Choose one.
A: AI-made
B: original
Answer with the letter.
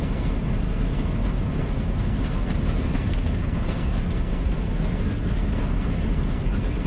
A